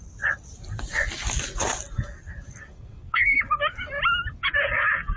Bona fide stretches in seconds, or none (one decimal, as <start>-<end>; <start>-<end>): 0.0-2.7; 3.4-5.2